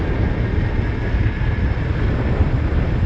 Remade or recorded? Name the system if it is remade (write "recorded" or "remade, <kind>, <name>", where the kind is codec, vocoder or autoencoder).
recorded